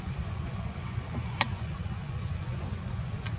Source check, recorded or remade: remade